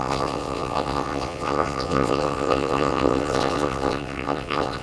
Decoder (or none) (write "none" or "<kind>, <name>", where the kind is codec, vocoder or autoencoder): vocoder, WaveNeXt